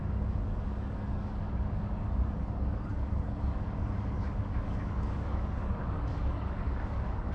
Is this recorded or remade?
remade